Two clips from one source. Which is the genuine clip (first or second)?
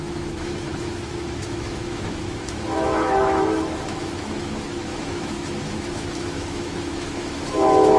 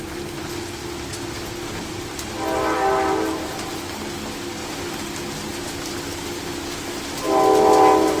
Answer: second